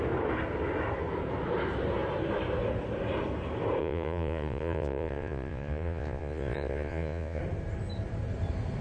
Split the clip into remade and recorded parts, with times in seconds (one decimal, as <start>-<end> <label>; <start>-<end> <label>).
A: 0.0-3.8 recorded; 3.8-7.4 remade; 7.4-8.8 recorded

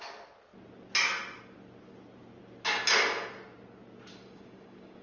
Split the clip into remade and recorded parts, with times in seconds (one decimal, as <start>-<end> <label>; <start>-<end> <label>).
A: 0.0-4.1 recorded; 4.1-5.0 remade

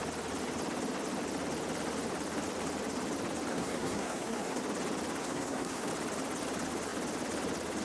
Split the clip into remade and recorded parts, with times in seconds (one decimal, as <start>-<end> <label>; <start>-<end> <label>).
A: 0.0-3.5 recorded; 3.5-4.6 remade; 4.6-5.2 recorded; 5.2-5.9 remade; 5.9-7.8 recorded

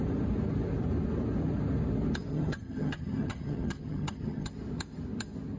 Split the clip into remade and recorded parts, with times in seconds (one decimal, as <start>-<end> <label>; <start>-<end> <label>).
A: 0.0-2.3 recorded; 2.3-4.5 remade; 4.5-5.6 recorded

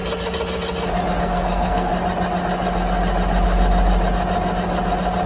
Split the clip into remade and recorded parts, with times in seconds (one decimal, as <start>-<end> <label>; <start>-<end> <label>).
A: 0.0-1.2 recorded; 1.2-1.9 remade; 1.9-5.3 recorded

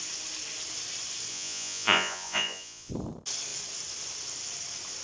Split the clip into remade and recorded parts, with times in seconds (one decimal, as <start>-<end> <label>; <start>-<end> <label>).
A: 0.0-1.3 recorded; 1.3-2.9 remade; 2.9-5.0 recorded